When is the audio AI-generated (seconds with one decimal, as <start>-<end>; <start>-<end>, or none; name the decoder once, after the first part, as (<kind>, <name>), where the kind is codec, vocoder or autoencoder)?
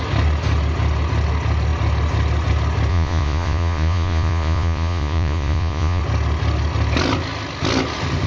2.9-6.0 (vocoder, Vocos)